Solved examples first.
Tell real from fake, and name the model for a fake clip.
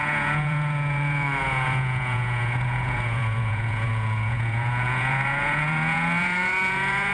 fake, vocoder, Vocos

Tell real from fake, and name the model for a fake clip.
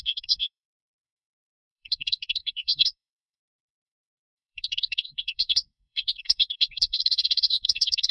fake, codec, SNAC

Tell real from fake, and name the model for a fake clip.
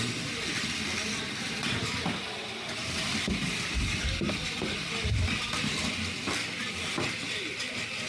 real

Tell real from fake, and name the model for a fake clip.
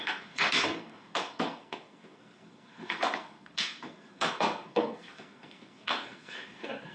fake, codec, SNAC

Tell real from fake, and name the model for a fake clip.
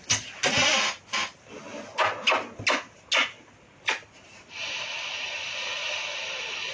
real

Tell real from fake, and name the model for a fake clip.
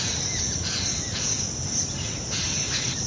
real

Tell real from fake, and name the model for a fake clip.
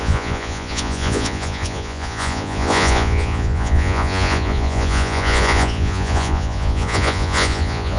fake, vocoder, Vocos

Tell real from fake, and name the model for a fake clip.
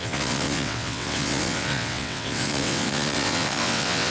fake, vocoder, WaveNeXt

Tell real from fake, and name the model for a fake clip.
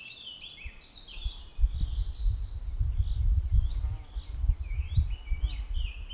real